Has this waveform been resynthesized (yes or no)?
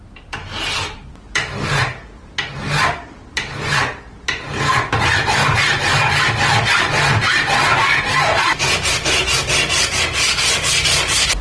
no